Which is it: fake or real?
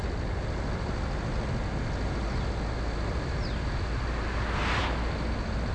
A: real